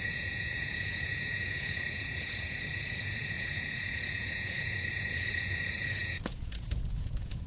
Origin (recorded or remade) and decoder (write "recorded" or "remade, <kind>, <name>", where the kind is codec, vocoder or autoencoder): remade, vocoder, Vocos